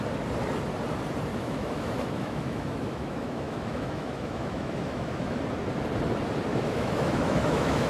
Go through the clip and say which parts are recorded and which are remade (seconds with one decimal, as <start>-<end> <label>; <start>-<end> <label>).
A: 0.0-1.3 recorded; 1.3-5.4 remade; 5.4-6.5 recorded; 6.5-7.9 remade

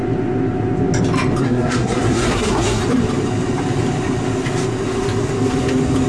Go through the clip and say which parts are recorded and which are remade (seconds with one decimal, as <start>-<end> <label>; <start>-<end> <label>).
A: 0.0-1.4 recorded; 1.4-2.8 remade; 2.8-6.1 recorded

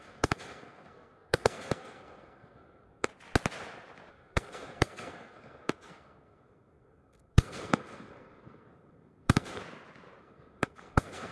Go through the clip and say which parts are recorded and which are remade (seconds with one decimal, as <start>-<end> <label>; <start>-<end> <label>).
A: 0.0-3.1 remade; 3.1-4.1 recorded; 4.1-9.6 remade; 9.6-10.2 recorded; 10.2-11.3 remade

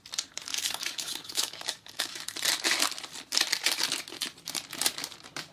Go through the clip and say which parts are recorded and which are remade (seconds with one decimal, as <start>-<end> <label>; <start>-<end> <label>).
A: 0.0-0.5 recorded; 0.5-2.2 remade; 2.2-5.5 recorded

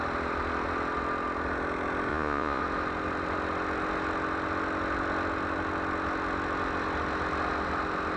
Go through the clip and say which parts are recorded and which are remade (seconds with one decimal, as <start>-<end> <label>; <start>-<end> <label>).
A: 0.0-2.1 recorded; 2.1-2.6 remade; 2.6-8.2 recorded

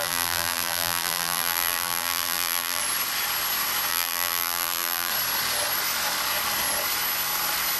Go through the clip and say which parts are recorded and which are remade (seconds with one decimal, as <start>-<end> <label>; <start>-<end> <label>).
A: 0.0-2.8 remade; 2.8-3.9 recorded; 3.9-5.1 remade; 5.1-7.8 recorded

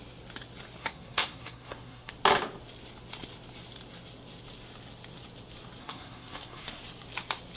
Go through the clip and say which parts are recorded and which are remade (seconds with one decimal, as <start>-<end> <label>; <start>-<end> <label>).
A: 0.0-0.8 recorded; 0.8-2.1 remade; 2.1-5.8 recorded; 5.8-6.8 remade; 6.8-7.6 recorded

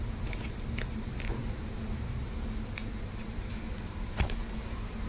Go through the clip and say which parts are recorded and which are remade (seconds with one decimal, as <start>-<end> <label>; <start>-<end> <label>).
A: 0.0-5.1 recorded